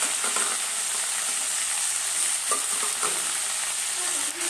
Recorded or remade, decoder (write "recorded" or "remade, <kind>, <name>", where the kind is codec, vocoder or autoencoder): recorded